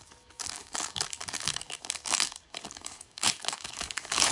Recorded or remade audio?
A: remade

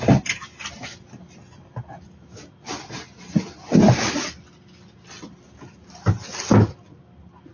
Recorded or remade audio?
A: recorded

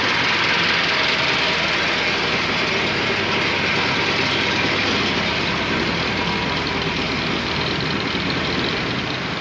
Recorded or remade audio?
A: recorded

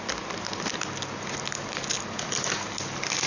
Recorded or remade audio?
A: recorded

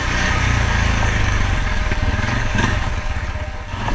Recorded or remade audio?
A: remade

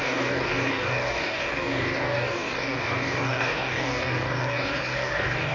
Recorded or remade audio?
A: remade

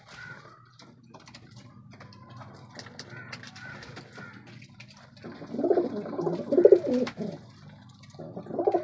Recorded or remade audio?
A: recorded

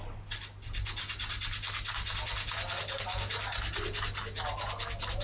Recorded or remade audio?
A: recorded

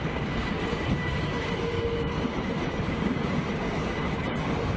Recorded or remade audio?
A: remade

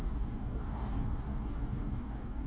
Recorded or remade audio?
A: remade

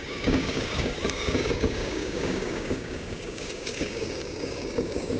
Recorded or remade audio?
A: remade